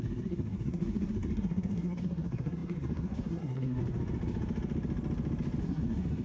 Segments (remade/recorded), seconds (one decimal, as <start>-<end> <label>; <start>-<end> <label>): 0.0-3.8 remade; 3.8-5.6 recorded; 5.6-6.2 remade